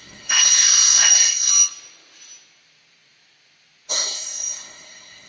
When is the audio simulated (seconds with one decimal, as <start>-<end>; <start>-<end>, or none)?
0.0-1.5; 3.9-5.3